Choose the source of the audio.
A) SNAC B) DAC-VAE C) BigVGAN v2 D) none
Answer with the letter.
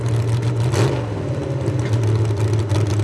D